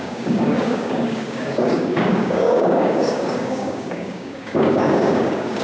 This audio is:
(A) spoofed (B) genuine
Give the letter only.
A